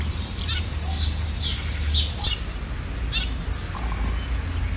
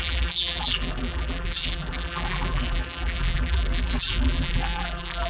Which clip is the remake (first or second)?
second